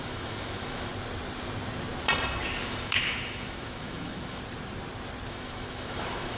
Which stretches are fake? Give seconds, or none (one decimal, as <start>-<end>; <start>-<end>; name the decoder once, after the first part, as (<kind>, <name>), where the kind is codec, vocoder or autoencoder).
0.0-0.9 (autoencoder, DAC-VAE); 2.6-4.4; 5.3-6.4